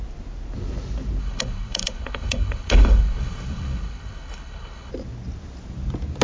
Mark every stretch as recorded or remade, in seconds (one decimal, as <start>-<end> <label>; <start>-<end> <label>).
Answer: 0.0-1.2 recorded; 1.2-4.9 remade; 4.9-6.2 recorded